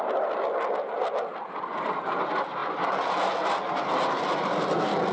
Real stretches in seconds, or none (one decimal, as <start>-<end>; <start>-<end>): 0.0-5.1